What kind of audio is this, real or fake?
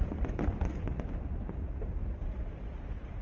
real